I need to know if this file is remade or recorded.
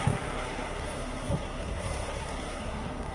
remade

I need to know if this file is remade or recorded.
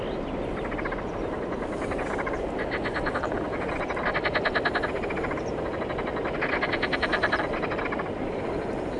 recorded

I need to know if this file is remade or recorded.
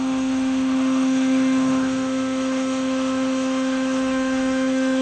remade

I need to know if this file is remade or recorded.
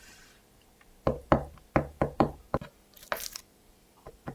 remade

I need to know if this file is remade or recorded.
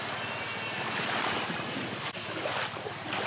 recorded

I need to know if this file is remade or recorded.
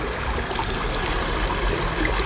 recorded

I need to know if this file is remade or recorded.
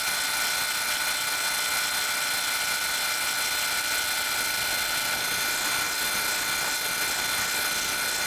recorded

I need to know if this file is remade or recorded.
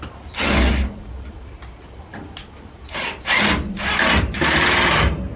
recorded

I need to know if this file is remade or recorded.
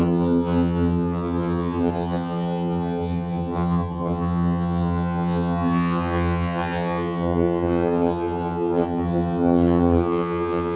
remade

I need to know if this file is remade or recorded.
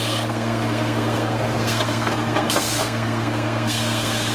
remade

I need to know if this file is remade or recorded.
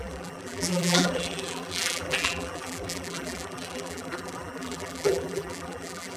remade